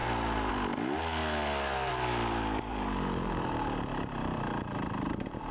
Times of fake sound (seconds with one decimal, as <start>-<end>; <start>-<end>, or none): 0.0-0.5; 2.7-5.5